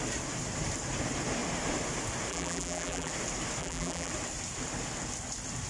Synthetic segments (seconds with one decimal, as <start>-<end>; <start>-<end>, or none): 2.3-3.1; 3.6-4.1